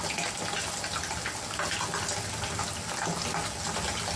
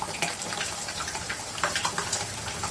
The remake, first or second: second